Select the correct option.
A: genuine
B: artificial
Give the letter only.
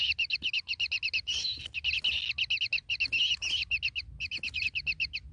A